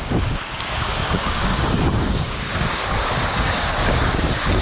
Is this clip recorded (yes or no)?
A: no